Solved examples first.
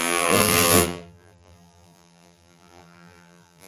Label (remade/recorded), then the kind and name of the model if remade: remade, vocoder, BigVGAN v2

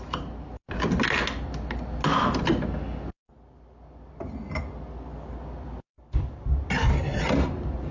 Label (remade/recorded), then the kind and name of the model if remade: recorded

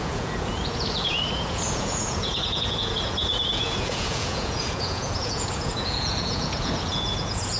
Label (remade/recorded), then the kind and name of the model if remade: remade, vocoder, Vocos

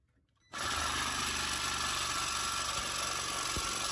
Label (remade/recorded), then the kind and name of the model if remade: recorded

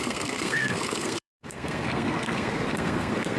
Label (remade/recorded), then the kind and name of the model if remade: remade, codec, SNAC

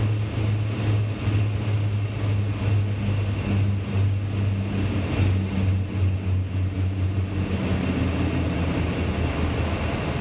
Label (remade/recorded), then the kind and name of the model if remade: recorded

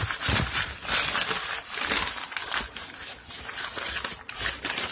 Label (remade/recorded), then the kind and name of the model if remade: recorded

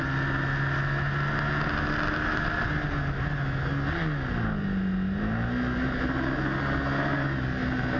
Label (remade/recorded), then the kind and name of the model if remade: recorded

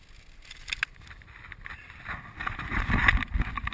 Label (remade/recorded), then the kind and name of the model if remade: recorded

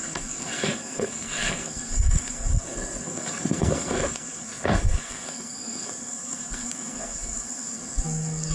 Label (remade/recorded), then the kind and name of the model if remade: remade, codec, SNAC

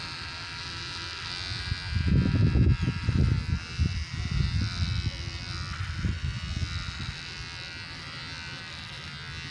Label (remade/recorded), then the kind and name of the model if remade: recorded